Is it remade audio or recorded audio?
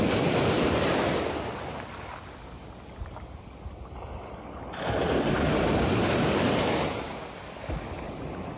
recorded